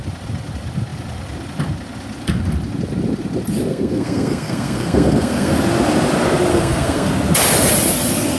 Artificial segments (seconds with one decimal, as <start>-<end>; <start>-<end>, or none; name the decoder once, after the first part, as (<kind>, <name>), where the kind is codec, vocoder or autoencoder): 3.7-5.5 (codec, SNAC); 6.5-7.1